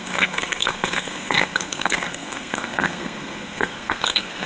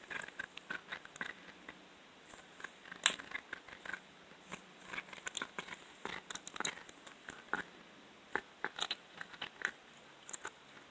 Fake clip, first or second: first